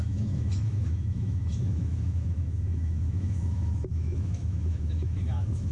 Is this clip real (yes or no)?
no